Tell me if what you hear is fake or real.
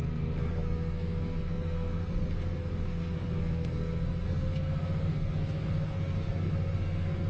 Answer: fake